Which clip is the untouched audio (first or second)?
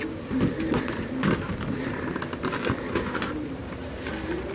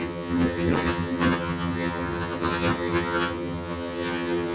first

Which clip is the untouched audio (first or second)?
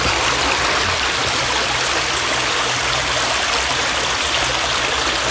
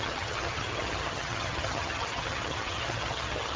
first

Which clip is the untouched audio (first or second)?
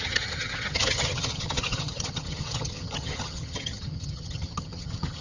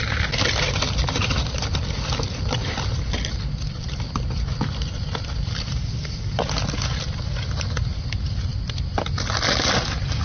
second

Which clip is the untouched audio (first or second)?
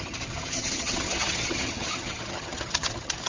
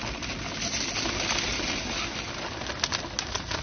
second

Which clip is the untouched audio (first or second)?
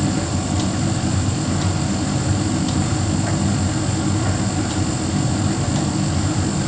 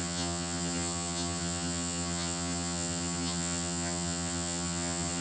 first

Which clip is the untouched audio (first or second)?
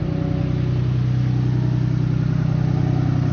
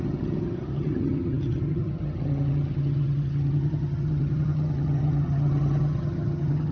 first